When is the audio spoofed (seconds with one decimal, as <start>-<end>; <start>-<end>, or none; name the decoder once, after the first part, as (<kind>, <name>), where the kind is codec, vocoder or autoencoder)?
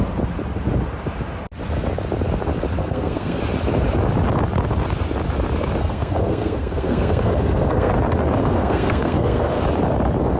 2.8-3.4 (codec, SNAC); 5.8-7.9; 8.4-9.6